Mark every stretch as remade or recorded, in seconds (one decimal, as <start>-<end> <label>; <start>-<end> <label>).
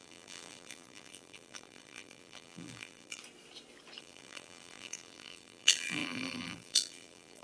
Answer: 0.0-3.2 remade; 3.2-4.0 recorded; 4.0-7.4 remade